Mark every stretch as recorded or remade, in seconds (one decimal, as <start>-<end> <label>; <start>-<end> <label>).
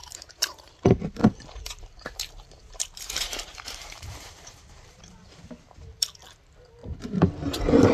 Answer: 0.0-0.7 remade; 0.7-1.2 recorded; 1.2-5.4 remade; 5.4-6.8 recorded; 6.8-7.9 remade